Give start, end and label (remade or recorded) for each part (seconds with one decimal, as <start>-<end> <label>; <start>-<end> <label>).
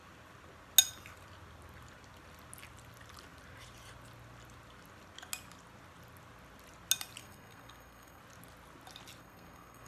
0.0-7.2 recorded; 7.2-8.2 remade; 8.2-9.2 recorded; 9.2-9.9 remade